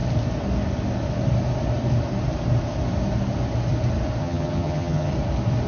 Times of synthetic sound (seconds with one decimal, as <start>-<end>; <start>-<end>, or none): 4.2-5.1